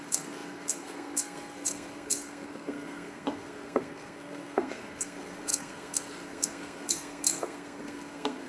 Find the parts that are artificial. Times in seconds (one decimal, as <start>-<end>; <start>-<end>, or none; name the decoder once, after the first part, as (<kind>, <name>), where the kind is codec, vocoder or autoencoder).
0.0-8.5 (codec, SNAC)